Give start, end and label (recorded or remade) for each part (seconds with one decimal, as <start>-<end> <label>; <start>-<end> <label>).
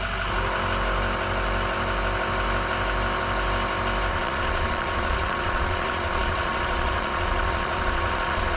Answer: 0.0-4.1 recorded; 4.1-8.6 remade